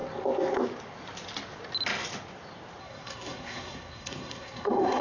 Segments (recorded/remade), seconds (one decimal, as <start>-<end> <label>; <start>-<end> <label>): 0.0-2.8 recorded; 2.8-5.0 remade